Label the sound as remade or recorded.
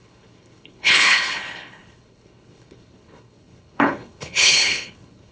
remade